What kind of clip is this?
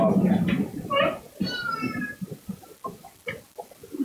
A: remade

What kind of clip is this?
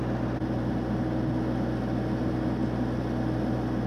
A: recorded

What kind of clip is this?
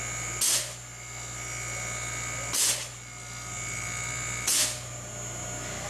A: recorded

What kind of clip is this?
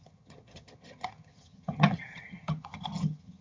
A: remade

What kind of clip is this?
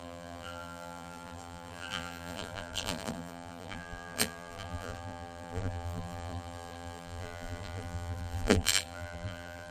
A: remade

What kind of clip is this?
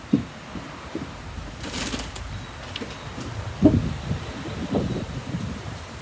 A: recorded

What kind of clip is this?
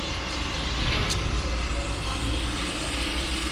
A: remade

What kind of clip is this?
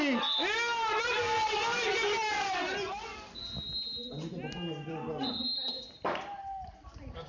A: recorded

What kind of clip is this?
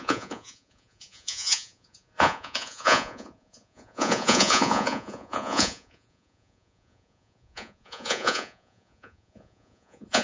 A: remade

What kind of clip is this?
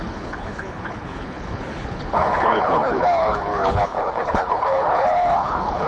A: remade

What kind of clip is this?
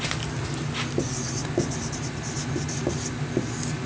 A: recorded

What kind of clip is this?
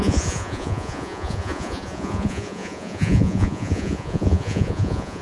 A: remade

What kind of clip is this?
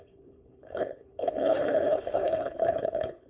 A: remade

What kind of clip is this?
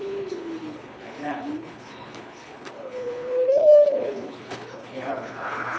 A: remade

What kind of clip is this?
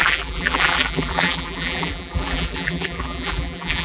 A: remade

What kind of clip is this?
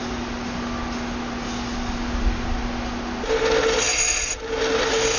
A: recorded